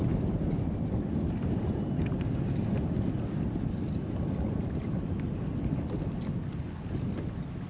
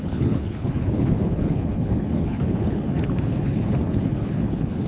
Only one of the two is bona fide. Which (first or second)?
first